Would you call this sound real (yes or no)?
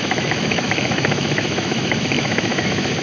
no